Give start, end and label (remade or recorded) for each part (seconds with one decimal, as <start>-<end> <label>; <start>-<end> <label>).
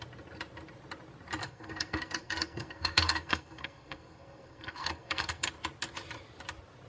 0.0-1.4 recorded; 1.4-5.5 remade; 5.5-6.9 recorded